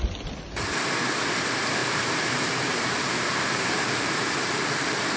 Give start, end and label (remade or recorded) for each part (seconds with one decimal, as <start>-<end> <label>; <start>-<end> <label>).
0.0-1.8 recorded; 1.8-5.2 remade